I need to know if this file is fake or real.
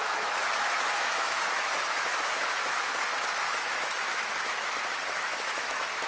fake